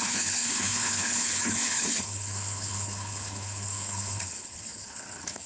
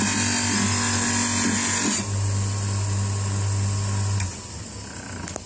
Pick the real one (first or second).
second